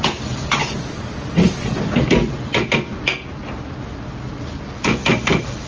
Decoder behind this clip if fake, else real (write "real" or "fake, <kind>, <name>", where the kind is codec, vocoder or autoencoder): real